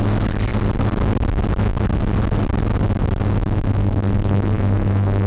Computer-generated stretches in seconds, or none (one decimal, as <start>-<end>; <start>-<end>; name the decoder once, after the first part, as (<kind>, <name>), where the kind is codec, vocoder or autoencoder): 3.7-5.3 (codec, SNAC)